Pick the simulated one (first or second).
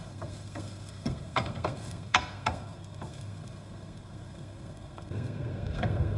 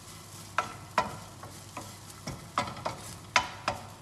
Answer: first